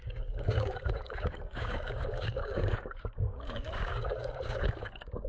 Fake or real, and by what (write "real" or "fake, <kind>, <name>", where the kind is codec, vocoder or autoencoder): fake, codec, DAC